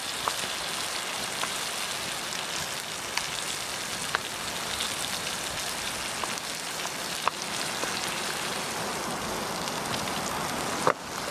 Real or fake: real